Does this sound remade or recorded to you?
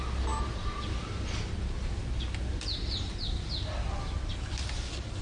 recorded